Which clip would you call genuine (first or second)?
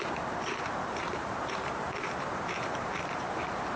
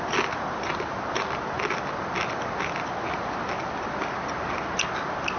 second